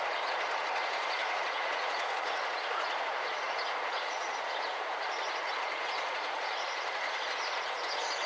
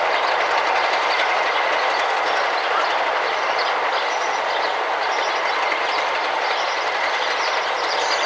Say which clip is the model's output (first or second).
first